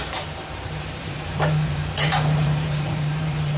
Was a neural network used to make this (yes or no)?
yes